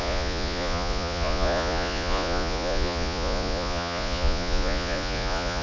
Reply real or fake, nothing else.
fake